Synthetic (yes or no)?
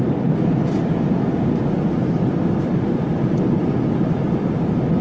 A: no